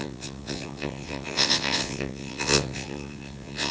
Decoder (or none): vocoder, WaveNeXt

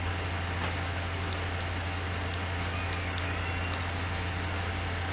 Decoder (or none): none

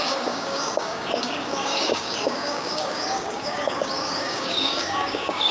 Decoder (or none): codec, DAC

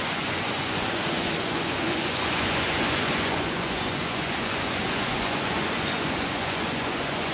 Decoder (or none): vocoder, Vocos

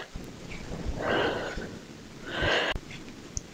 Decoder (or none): none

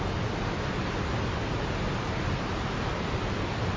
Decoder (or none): none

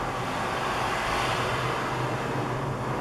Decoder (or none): none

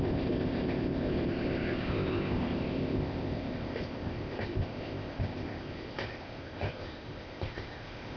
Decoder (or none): codec, ZipCodec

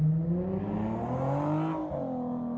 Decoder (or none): none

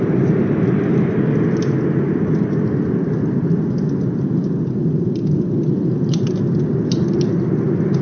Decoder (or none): none